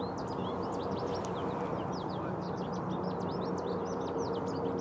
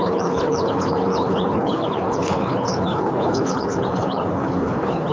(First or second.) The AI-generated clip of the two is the second